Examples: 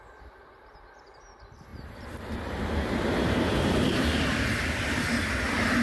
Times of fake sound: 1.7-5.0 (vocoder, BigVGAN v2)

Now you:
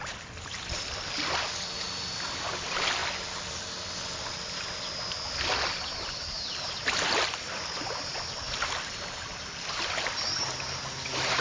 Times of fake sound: 3.0-3.5 (vocoder, BigVGAN v2)

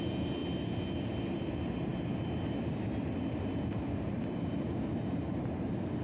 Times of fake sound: 1.9-5.5 (vocoder, BigVGAN v2)

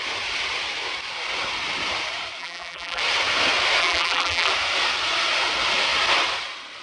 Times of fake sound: 2.4-3.0 (vocoder, BigVGAN v2); 3.8-4.5